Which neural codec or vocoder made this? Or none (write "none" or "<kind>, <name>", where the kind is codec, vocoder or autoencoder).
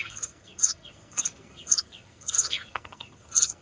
codec, SNAC